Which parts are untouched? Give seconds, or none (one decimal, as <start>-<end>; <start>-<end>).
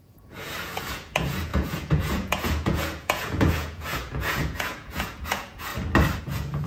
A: 5.7-6.2